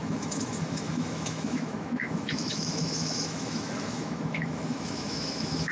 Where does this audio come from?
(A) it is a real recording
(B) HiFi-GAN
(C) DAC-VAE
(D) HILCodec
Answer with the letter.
C